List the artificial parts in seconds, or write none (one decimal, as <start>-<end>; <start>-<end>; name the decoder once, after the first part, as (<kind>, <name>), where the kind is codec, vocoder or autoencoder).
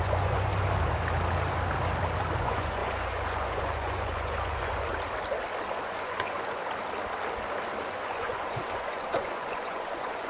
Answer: 0.0-0.5 (vocoder, Vocos); 2.4-4.9; 5.7-6.6; 7.9-10.3